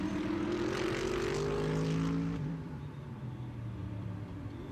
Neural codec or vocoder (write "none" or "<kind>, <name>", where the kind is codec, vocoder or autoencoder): vocoder, BigVGAN v2